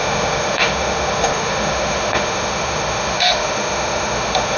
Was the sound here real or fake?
fake